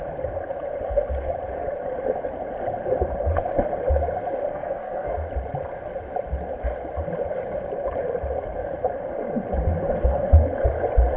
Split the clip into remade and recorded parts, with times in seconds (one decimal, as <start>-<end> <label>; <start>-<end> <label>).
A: 0.0-4.5 recorded; 4.5-5.1 remade; 5.1-11.2 recorded